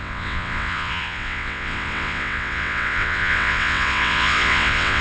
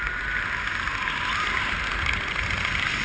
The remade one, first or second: first